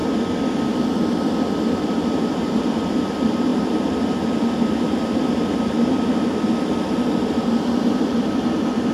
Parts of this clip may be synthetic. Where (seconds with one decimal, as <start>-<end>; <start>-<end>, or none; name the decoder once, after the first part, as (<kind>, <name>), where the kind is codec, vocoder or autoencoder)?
1.7-8.9 (vocoder, BigVGAN v2)